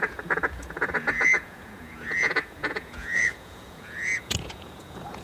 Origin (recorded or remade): remade